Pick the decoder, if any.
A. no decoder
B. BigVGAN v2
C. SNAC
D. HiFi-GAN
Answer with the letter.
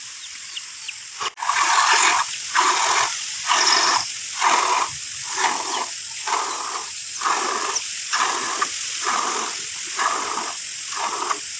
A